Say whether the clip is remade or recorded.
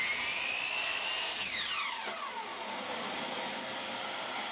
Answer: recorded